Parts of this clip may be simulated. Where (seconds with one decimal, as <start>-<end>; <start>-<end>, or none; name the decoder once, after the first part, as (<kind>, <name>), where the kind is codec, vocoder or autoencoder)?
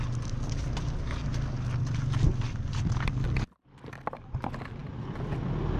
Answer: none